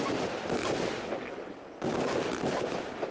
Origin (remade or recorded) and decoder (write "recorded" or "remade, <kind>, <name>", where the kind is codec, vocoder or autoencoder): recorded